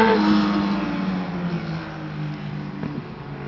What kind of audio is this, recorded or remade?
recorded